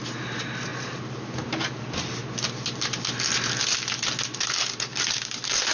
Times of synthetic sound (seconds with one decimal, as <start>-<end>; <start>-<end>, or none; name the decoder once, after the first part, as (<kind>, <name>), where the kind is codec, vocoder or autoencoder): 0.7-1.8 (vocoder, BigVGAN v2)